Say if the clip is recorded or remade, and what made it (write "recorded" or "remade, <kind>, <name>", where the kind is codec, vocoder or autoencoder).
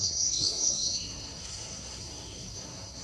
remade, codec, SNAC